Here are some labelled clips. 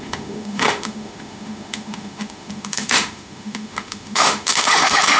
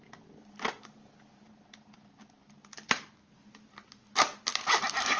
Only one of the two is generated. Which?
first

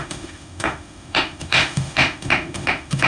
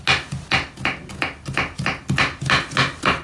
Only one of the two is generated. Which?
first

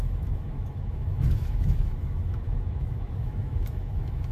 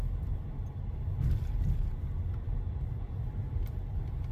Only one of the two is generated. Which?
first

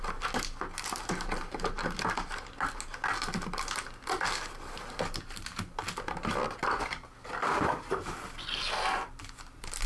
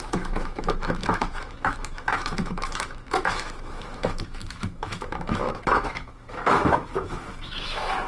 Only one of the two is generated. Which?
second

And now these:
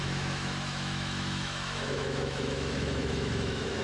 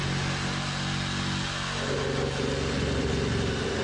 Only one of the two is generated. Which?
first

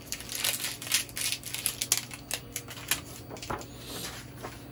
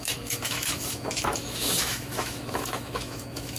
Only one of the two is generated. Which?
second